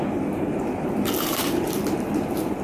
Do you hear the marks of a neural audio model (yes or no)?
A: no